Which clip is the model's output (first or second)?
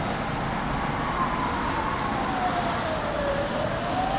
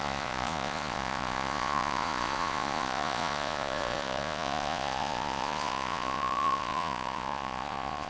second